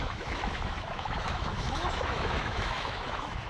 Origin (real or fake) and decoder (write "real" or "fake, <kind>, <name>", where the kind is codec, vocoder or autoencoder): fake, autoencoder, DAC-VAE